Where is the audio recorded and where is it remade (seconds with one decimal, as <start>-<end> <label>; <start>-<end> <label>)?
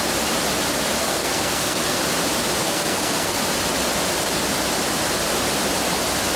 0.0-1.0 recorded; 1.0-2.0 remade; 2.0-2.6 recorded; 2.6-3.4 remade; 3.4-6.4 recorded